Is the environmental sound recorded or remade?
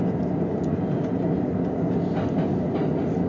recorded